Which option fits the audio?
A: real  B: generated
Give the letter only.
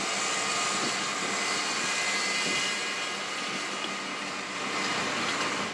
A